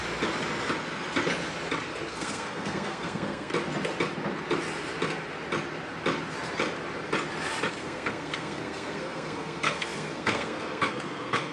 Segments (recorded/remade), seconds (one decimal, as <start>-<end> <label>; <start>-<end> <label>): 0.0-2.1 recorded; 2.1-3.5 remade; 3.5-7.7 recorded; 7.7-11.5 remade